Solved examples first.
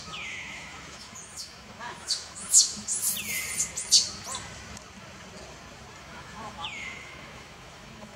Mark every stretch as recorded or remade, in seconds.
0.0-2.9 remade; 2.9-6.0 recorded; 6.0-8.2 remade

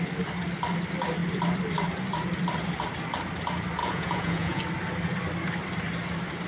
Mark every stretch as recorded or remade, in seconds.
0.0-3.8 recorded; 3.8-4.6 remade; 4.6-6.5 recorded

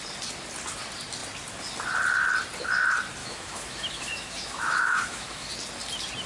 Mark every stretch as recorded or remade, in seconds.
0.0-3.2 recorded; 3.2-5.5 remade; 5.5-6.3 recorded

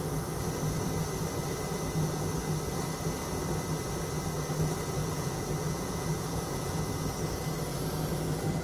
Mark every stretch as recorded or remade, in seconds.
0.0-5.0 recorded; 5.0-6.8 remade; 6.8-8.6 recorded

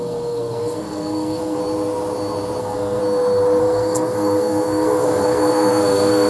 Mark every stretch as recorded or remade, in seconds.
0.0-1.6 remade; 1.6-2.6 recorded; 2.6-3.0 remade; 3.0-3.6 recorded; 3.6-6.3 remade

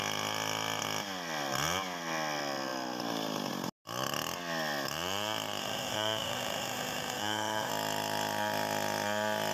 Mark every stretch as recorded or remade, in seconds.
0.0-5.6 recorded; 5.6-7.7 remade; 7.7-9.5 recorded

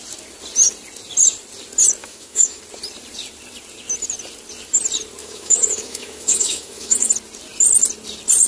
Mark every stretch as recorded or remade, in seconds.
0.0-2.0 recorded; 2.0-2.6 remade; 2.6-5.2 recorded; 5.2-7.1 remade; 7.1-8.5 recorded